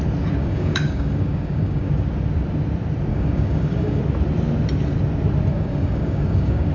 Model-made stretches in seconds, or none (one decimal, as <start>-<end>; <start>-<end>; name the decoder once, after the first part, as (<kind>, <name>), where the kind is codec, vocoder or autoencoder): 0.4-1.9 (codec, DAC); 3.1-4.0; 5.5-6.7